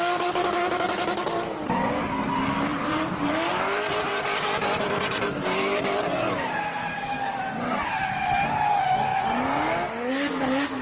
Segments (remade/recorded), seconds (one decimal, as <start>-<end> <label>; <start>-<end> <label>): 0.0-2.7 recorded; 2.7-7.3 remade; 7.3-10.8 recorded